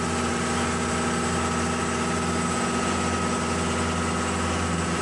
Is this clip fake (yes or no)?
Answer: no